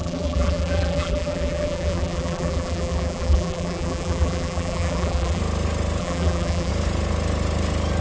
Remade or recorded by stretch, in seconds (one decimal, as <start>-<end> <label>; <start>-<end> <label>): 0.0-5.4 remade; 5.4-6.0 recorded; 6.0-6.7 remade; 6.7-8.0 recorded